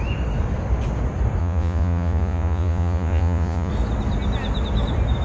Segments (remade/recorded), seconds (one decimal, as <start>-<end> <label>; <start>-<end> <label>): 0.0-1.4 recorded; 1.4-3.7 remade; 3.7-5.2 recorded